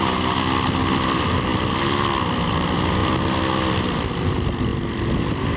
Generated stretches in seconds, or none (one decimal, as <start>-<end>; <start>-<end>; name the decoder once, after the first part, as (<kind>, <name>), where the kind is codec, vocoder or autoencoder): 0.0-3.0 (vocoder, BigVGAN v2); 3.7-4.7